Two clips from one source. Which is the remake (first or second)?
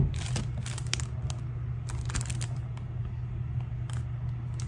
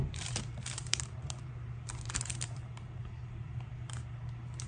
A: second